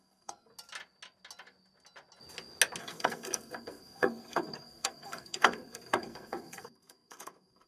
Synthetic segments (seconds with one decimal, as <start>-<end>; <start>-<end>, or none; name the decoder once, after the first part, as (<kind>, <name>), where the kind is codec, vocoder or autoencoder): 0.0-0.5 (codec, SNAC); 2.8-7.7